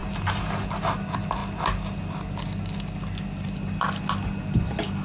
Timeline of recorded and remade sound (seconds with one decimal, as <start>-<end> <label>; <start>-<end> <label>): 0.0-5.0 recorded